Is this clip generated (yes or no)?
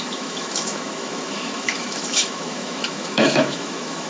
yes